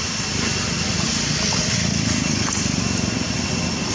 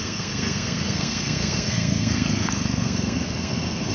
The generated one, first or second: second